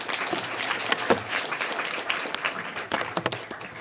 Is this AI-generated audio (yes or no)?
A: no